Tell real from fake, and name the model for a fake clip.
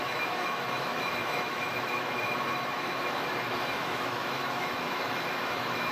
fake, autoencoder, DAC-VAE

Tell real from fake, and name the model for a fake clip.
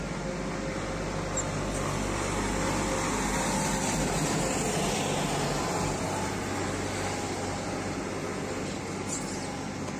real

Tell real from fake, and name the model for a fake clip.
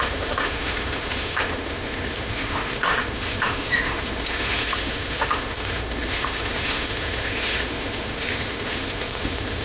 fake, autoencoder, DAC-VAE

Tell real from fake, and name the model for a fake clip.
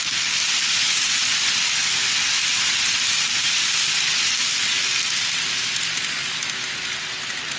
real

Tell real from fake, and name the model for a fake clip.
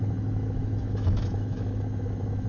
fake, autoencoder, DAC-VAE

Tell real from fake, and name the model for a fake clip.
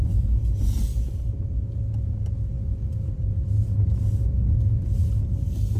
real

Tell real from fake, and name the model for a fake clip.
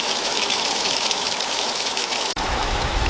fake, autoencoder, DAC-VAE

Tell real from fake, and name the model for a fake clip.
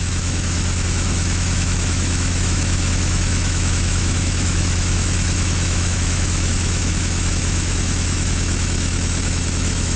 fake, autoencoder, DAC-VAE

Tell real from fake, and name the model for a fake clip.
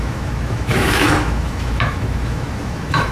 fake, autoencoder, DAC-VAE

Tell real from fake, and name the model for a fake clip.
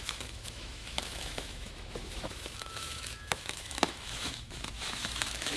fake, autoencoder, DAC-VAE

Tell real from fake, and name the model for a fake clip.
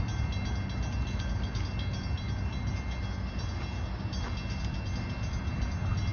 real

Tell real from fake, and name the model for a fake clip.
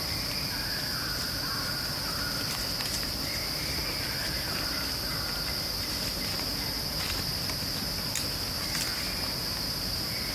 real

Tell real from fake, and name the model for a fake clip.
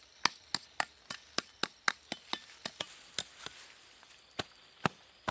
real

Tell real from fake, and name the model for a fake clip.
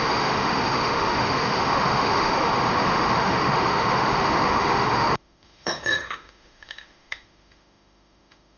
fake, autoencoder, DAC-VAE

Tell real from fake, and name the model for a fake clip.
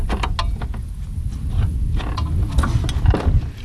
real